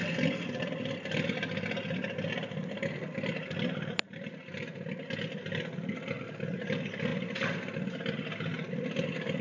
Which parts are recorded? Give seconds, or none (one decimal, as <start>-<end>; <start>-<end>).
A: 0.0-9.4